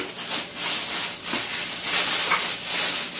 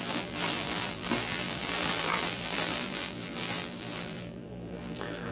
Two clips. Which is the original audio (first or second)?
first